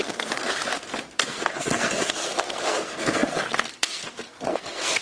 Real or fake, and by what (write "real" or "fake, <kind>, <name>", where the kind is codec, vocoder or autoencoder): fake, codec, SNAC